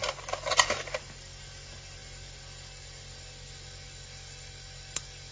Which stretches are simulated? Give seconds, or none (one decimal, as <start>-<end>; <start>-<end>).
none